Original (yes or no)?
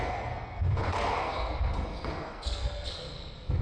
no